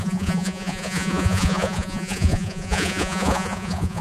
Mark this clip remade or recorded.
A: remade